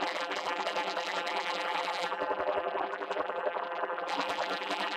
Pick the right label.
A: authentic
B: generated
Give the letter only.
B